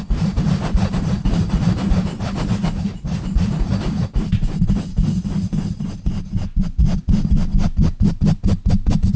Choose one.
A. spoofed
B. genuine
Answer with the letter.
B